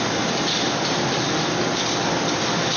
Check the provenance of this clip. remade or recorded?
recorded